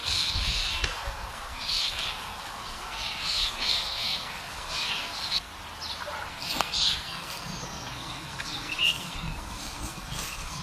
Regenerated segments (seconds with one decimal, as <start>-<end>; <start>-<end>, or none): 0.0-5.5; 6.3-10.6